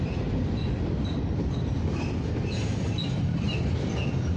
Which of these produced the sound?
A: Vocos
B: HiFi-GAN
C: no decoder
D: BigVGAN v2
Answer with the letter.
C